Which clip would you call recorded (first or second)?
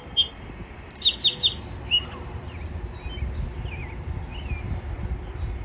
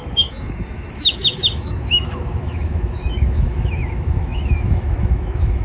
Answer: first